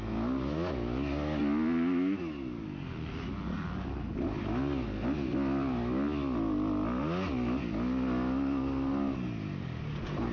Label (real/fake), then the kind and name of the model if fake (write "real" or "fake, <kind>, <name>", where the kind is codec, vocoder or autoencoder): real